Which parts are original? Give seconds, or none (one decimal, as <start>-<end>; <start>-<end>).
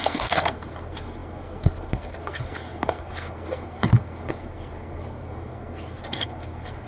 none